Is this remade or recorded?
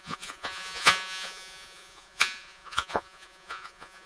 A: remade